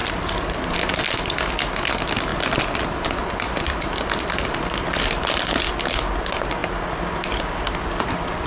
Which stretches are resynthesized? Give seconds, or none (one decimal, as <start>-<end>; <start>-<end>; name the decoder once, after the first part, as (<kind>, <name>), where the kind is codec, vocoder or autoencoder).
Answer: 3.2-5.7 (vocoder, BigVGAN v2); 6.6-8.1